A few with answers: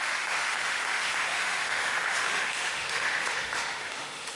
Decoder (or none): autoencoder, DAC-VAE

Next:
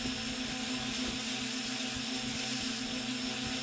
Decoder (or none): none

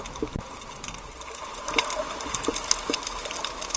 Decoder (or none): none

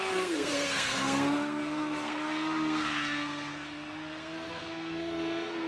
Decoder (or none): codec, SNAC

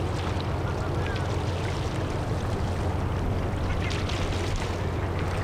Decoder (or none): none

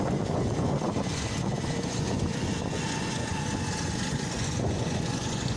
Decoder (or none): vocoder, Vocos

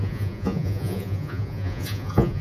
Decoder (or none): vocoder, Vocos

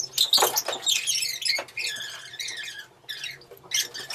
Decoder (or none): none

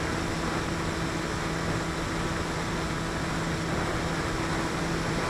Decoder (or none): none